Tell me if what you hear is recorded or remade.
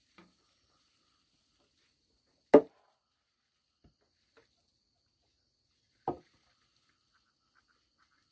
recorded